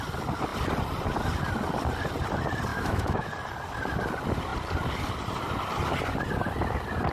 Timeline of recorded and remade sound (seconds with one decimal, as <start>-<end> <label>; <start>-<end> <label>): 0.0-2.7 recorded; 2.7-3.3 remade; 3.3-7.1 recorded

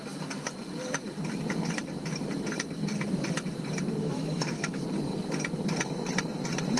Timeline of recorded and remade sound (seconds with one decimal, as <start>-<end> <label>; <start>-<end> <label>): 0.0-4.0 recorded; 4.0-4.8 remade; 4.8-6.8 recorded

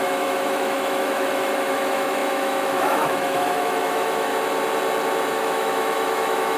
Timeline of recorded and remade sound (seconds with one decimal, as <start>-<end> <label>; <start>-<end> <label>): 0.0-4.3 remade; 4.3-5.3 recorded; 5.3-6.6 remade

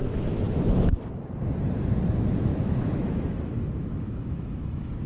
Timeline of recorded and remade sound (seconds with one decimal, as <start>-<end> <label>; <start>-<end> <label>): 0.0-2.5 recorded; 2.5-5.1 remade

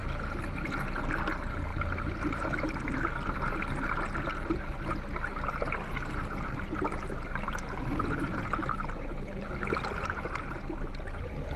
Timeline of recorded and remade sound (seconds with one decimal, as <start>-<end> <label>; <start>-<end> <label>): 0.0-11.6 recorded

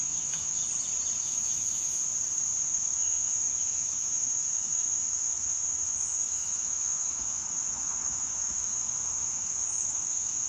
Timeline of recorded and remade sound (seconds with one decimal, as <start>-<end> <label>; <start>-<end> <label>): 0.0-0.6 remade; 0.6-1.2 recorded; 1.2-2.0 remade; 2.0-2.6 recorded; 2.6-10.5 remade

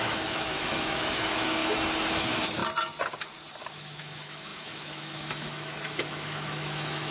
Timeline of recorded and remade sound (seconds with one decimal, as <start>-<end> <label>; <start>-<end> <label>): 0.0-1.6 remade; 1.6-2.1 recorded; 2.1-2.6 remade; 2.6-3.7 recorded; 3.7-7.1 remade

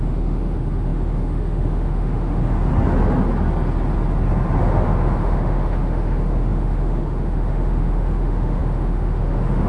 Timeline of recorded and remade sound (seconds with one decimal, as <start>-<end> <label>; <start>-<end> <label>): 0.0-2.7 remade; 2.7-4.6 recorded; 4.6-9.7 remade